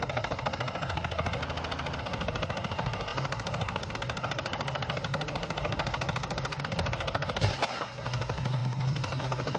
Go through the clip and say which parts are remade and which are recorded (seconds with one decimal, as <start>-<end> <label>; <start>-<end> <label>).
0.0-1.4 remade; 1.4-2.0 recorded; 2.0-9.6 remade